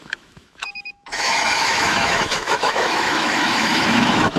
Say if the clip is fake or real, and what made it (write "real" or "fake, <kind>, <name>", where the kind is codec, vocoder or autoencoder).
fake, autoencoder, DAC-VAE